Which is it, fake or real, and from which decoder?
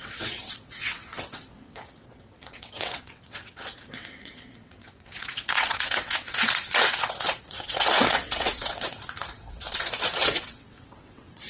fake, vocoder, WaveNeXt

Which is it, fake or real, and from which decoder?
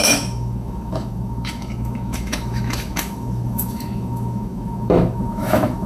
fake, autoencoder, DAC-VAE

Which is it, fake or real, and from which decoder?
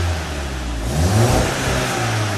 real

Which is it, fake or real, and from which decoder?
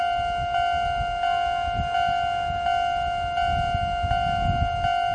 real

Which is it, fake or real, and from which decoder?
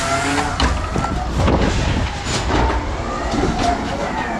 real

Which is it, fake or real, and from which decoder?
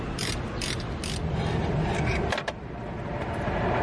real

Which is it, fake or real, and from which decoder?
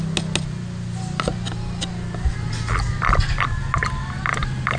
real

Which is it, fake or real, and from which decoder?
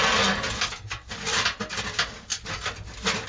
real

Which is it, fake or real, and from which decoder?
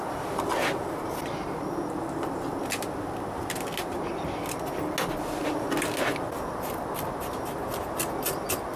real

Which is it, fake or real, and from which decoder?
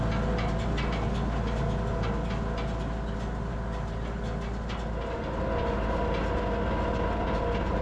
real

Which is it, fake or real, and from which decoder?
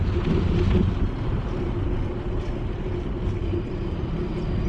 real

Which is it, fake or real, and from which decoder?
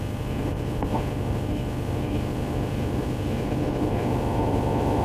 fake, autoencoder, DAC-VAE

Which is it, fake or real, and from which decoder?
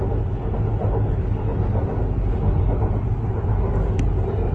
real